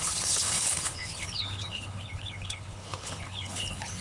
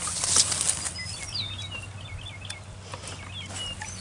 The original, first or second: second